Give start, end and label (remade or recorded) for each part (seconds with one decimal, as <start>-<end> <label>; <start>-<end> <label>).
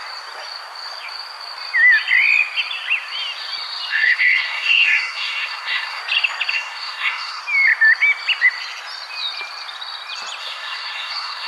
0.0-3.9 recorded; 3.9-6.0 remade; 6.0-6.5 recorded; 6.5-7.4 remade; 7.4-10.4 recorded; 10.4-11.5 remade